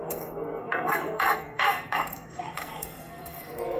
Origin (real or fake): fake